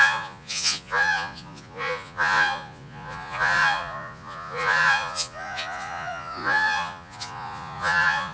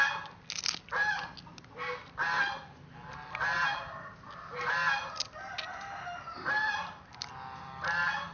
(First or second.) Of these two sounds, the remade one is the first